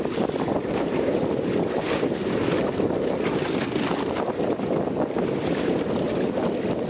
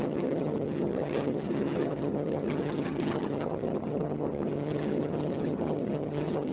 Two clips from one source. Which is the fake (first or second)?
second